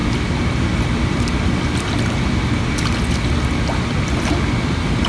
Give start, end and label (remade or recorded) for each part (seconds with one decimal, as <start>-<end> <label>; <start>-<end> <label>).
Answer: 0.0-5.1 recorded